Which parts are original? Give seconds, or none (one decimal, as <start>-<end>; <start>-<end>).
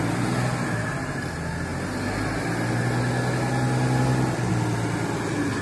0.0-5.6